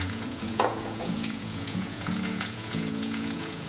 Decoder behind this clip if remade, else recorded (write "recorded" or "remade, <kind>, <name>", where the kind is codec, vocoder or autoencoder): remade, vocoder, Vocos